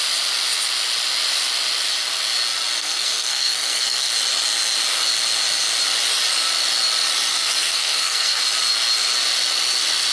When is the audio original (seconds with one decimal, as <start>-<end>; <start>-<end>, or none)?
0.0-2.8; 4.1-7.3; 8.4-10.1